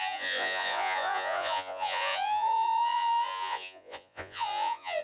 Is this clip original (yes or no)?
no